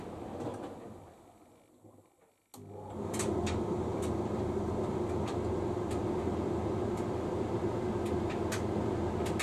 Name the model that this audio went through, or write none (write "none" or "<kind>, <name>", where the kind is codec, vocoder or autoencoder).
none